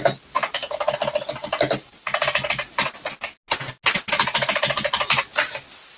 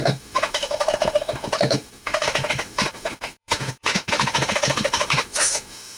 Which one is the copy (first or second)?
second